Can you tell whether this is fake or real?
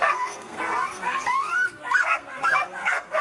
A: fake